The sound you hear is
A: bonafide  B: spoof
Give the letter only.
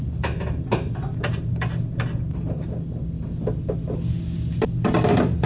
B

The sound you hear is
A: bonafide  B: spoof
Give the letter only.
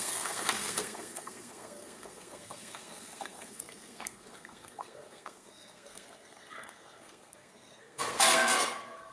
B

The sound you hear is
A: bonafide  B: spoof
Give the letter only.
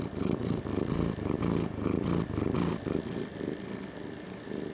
A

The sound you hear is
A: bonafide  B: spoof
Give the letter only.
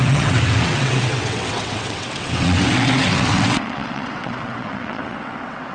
B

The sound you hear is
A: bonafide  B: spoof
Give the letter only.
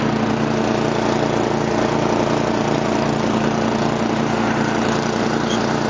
A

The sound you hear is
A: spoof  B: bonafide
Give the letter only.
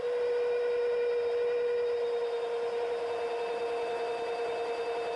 B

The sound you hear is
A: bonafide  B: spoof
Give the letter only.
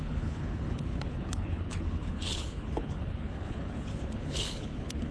B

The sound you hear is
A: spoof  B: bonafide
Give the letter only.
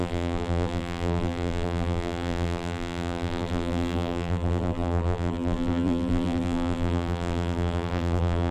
A